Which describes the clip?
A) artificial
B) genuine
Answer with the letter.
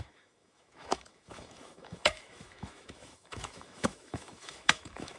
A